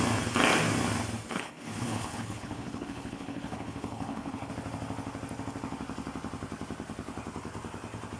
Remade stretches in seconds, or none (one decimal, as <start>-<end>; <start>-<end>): 1.3-4.5